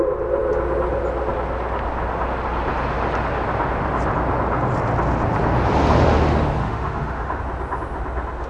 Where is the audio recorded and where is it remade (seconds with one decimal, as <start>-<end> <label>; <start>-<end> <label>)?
0.0-6.6 recorded; 6.6-7.4 remade; 7.4-8.5 recorded